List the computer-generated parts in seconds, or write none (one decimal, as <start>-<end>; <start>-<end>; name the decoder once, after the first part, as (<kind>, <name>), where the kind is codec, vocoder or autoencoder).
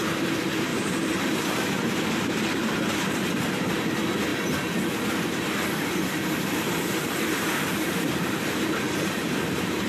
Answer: 0.0-0.7 (vocoder, BigVGAN v2); 1.2-4.3; 5.4-9.9